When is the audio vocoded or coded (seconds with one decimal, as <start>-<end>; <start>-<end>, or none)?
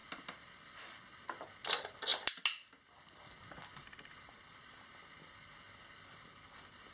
none